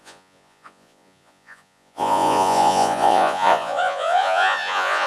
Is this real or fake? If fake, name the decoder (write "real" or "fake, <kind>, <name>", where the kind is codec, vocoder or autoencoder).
fake, vocoder, Vocos